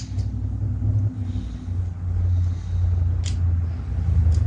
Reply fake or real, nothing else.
real